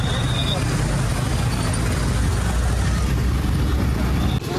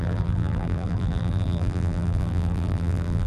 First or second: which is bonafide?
first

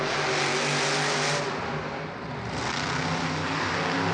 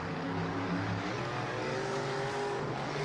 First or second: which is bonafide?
first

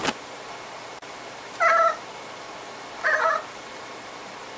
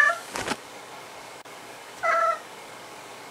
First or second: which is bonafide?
first